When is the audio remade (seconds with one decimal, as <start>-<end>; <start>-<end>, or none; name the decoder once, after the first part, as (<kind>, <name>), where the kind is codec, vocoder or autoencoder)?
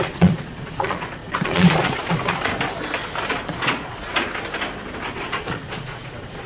0.0-2.5 (vocoder, Vocos); 3.3-4.1; 5.1-6.5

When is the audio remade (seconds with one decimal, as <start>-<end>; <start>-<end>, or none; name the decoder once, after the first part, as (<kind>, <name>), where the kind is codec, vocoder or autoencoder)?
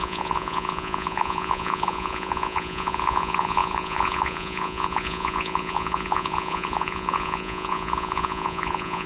0.0-9.1 (vocoder, Vocos)